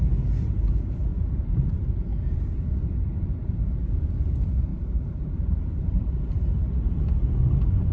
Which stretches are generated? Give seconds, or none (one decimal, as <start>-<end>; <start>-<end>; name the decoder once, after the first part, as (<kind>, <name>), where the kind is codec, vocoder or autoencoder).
4.7-6.2 (vocoder, BigVGAN v2)